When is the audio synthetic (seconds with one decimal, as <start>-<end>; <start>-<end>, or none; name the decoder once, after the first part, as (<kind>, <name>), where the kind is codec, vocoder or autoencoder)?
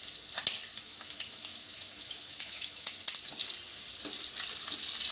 0.7-2.9 (autoencoder, DAC-VAE)